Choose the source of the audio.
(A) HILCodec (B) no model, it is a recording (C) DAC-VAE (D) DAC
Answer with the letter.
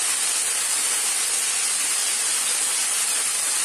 B